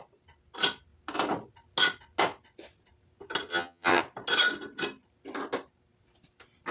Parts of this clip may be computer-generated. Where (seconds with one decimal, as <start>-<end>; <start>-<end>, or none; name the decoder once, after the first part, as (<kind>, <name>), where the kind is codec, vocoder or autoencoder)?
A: 3.5-4.0 (vocoder, HiFi-GAN)